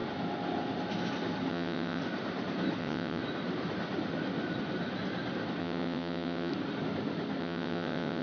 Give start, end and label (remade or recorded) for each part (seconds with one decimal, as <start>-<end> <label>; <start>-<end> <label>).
0.0-1.5 recorded; 1.5-2.0 remade; 2.0-2.8 recorded; 2.8-3.2 remade; 3.2-5.6 recorded; 5.6-6.5 remade; 6.5-7.4 recorded; 7.4-8.2 remade